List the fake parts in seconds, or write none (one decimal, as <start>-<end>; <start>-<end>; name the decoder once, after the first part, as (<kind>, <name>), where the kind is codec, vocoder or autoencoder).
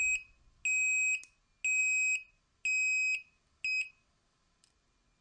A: none